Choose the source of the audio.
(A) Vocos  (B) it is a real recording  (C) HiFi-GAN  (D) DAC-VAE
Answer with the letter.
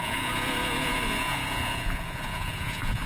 A